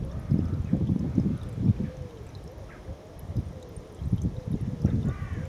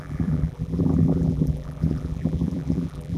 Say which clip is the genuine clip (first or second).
first